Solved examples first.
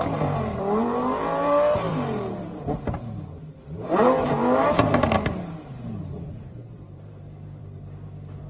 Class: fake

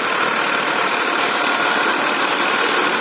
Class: fake